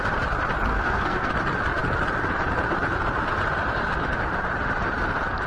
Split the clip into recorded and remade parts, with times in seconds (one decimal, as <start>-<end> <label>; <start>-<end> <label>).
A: 0.0-0.7 recorded; 0.7-1.3 remade; 1.3-5.5 recorded